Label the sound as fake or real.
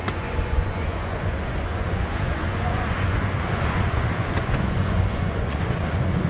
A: fake